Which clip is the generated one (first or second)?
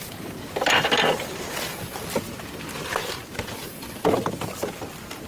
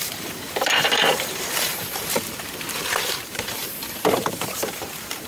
second